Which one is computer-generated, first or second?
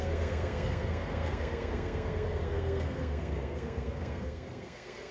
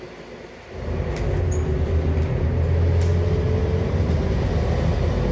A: first